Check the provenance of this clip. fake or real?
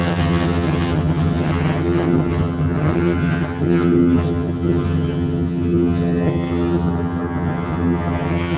fake